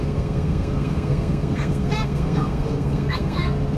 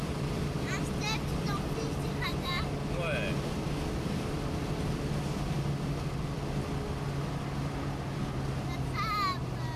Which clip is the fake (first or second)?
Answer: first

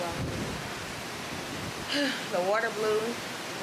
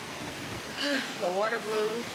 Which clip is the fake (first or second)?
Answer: second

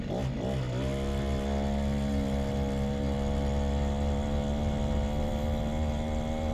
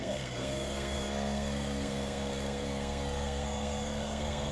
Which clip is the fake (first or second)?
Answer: second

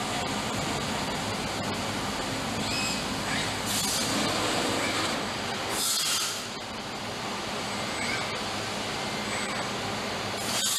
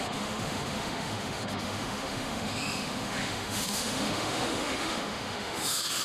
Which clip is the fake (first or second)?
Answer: second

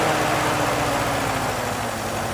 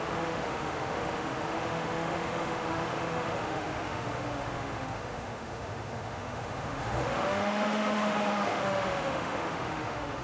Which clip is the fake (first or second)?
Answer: second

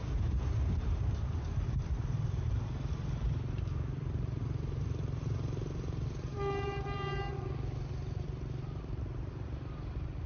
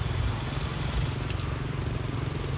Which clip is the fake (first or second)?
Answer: first